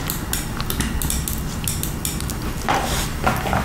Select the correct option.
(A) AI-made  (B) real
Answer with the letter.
B